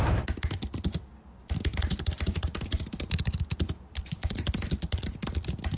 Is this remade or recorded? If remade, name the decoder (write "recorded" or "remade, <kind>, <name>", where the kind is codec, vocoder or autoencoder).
recorded